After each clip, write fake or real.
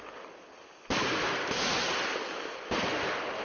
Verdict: real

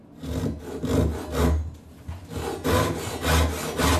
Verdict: real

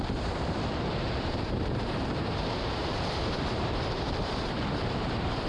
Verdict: fake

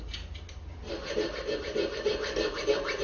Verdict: real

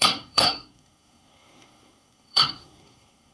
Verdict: fake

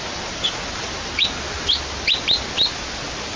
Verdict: real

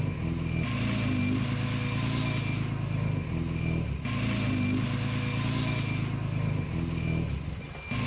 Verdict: real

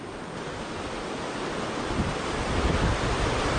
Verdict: real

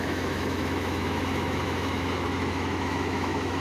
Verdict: fake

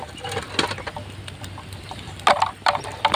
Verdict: real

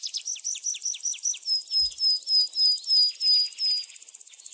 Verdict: real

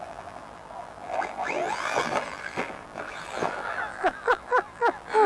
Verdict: fake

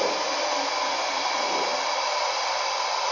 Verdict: real